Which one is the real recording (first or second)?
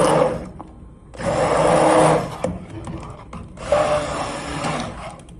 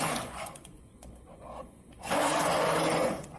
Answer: first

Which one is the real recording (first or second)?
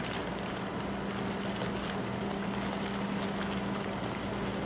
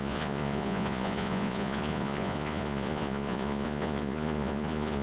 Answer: first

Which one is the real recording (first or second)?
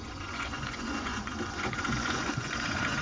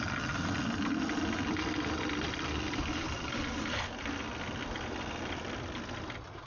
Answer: second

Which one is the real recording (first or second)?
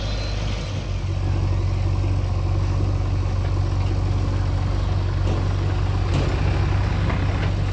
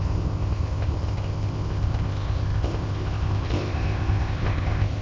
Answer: first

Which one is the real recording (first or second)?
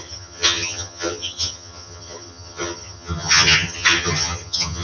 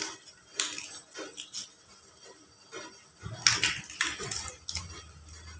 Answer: second